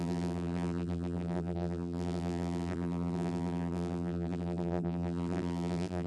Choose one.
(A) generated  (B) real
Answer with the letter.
A